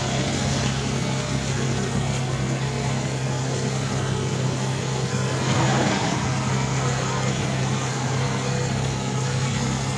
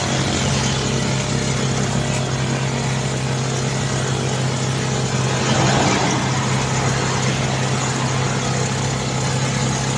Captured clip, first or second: second